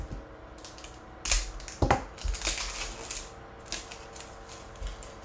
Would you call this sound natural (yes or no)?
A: yes